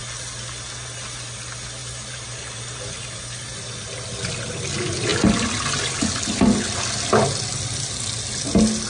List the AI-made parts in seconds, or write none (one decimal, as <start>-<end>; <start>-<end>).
1.8-2.8